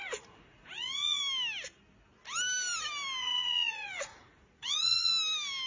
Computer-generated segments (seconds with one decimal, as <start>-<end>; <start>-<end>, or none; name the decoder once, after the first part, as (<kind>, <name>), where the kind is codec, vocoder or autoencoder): 0.0-1.2 (vocoder, Vocos); 3.2-5.1